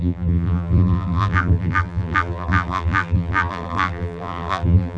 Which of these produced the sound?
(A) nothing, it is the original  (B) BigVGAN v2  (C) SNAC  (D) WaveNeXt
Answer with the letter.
B